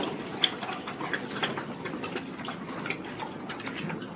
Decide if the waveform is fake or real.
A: real